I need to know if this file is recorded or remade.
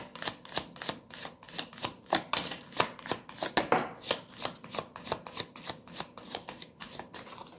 recorded